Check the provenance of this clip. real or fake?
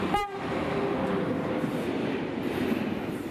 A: real